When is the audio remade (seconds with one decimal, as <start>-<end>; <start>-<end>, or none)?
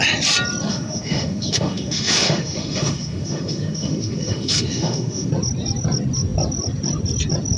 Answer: 0.7-5.3